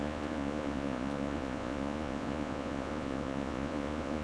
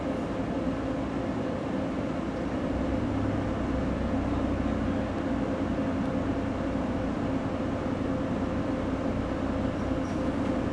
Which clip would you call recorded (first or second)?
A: second